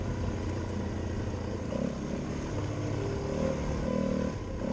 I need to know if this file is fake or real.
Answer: real